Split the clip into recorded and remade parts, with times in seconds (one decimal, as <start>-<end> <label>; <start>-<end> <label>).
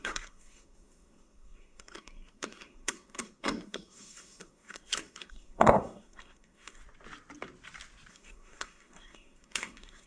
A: 0.0-6.8 remade; 6.8-8.1 recorded; 8.1-10.1 remade